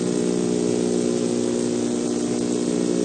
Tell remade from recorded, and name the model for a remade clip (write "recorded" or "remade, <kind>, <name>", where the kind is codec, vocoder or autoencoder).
recorded